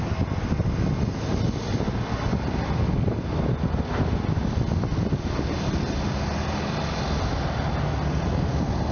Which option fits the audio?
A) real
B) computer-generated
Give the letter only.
A